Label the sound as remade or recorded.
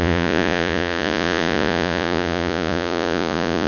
remade